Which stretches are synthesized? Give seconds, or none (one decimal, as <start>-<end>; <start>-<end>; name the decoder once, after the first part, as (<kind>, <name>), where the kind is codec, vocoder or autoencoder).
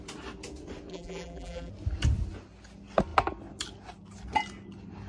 0.9-1.7 (vocoder, BigVGAN v2)